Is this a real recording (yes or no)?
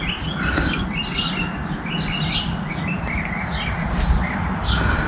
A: yes